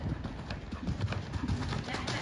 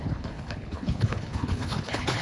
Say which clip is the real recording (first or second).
first